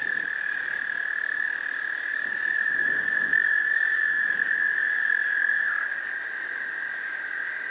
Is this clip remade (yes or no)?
yes